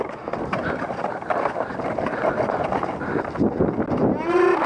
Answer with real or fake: real